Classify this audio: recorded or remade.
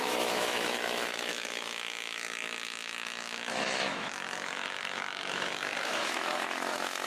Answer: remade